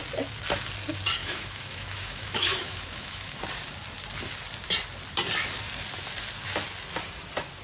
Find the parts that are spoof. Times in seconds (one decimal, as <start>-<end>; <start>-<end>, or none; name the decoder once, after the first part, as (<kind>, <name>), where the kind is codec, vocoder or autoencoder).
1.2-3.4 (autoencoder, DAC-VAE)